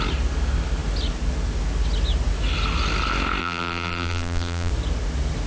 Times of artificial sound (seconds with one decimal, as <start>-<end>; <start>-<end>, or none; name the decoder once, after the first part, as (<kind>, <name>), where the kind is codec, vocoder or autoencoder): 3.4-4.7 (vocoder, BigVGAN v2)

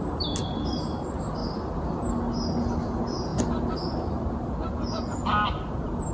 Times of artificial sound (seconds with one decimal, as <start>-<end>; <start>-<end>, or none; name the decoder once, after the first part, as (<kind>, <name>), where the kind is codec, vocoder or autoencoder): 1.4-2.1 (vocoder, BigVGAN v2)